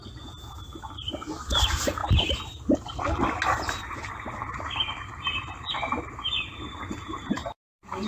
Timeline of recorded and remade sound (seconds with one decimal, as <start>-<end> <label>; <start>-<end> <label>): 0.0-7.4 recorded; 7.4-8.1 remade